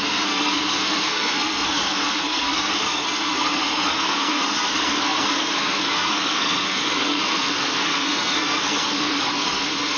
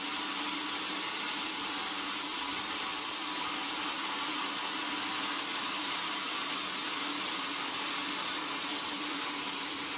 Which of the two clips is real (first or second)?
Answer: second